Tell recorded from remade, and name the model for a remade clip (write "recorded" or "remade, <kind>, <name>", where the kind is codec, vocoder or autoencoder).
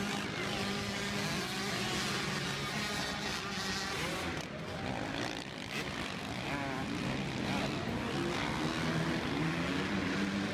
recorded